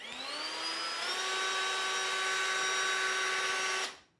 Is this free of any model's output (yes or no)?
yes